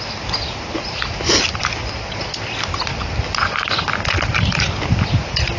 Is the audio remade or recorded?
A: recorded